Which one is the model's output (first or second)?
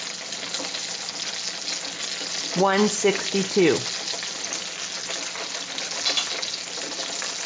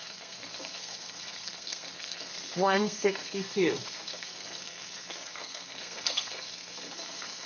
second